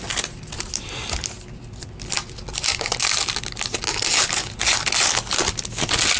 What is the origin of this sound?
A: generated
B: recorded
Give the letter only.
B